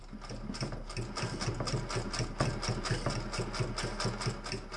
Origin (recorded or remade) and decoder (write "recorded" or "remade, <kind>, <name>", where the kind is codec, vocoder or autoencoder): recorded